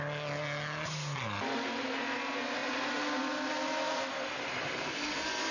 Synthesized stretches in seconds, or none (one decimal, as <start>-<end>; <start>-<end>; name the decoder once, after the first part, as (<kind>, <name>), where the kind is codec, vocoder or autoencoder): 2.6-5.5 (vocoder, BigVGAN v2)